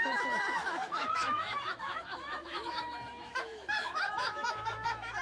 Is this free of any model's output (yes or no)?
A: no